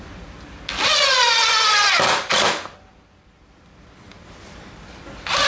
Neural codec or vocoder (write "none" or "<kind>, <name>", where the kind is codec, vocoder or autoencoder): none